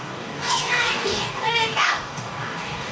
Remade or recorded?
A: remade